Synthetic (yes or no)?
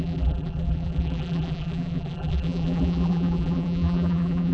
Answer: yes